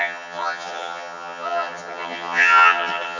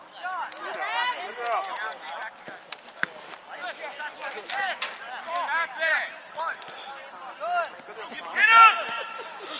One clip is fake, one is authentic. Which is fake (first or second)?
first